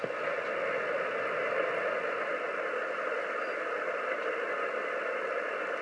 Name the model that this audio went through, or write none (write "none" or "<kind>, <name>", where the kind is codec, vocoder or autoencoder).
none